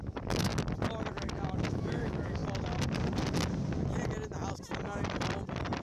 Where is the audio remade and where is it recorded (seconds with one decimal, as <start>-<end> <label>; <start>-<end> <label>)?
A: 0.0-0.5 remade; 0.5-1.1 recorded; 1.1-2.4 remade; 2.4-5.8 recorded